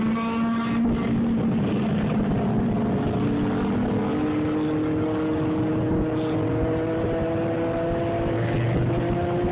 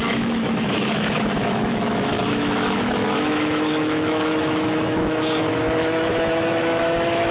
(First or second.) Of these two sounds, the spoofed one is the second